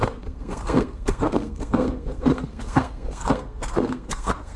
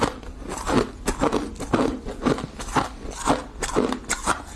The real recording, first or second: second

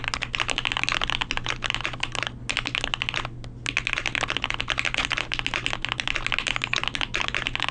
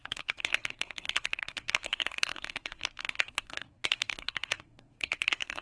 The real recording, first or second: first